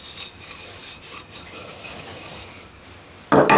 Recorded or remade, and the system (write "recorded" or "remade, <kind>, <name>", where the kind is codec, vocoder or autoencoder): recorded